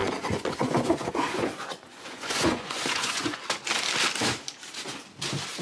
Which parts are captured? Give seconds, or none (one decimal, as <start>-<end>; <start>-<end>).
3.4-5.6